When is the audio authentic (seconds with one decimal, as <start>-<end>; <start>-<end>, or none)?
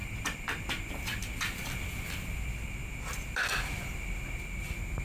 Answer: 0.7-5.0